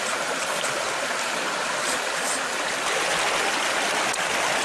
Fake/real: real